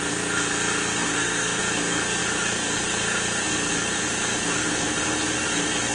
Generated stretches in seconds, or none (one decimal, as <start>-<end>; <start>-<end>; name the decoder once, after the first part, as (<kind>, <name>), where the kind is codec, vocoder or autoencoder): 1.1-1.6 (codec, SNAC)